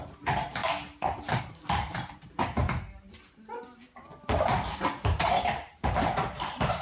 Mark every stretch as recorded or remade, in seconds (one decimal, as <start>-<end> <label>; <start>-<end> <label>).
0.0-0.6 remade; 0.6-1.4 recorded; 1.4-2.6 remade; 2.6-5.2 recorded; 5.2-6.8 remade